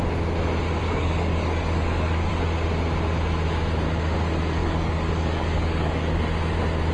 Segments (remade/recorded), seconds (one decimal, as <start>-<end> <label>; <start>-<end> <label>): 0.0-0.8 recorded; 0.8-2.3 remade; 2.3-4.6 recorded; 4.6-6.2 remade; 6.2-6.9 recorded